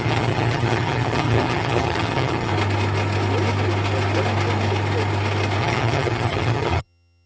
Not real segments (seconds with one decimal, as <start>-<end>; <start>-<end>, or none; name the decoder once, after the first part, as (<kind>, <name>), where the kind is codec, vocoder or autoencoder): 0.0-2.5 (vocoder, HiFi-GAN); 5.6-7.3